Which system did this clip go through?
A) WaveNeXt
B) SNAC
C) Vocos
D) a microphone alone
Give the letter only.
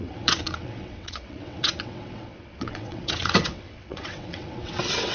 A